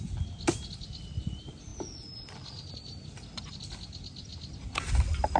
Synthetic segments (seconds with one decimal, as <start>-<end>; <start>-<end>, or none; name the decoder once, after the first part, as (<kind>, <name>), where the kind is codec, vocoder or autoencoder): none